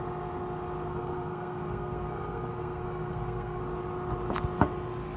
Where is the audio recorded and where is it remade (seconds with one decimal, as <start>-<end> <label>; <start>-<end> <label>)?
0.0-0.9 recorded; 0.9-3.6 remade; 3.6-5.2 recorded